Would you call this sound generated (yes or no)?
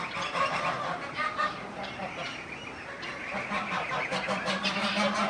no